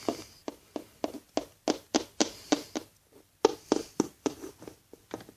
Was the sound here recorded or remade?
recorded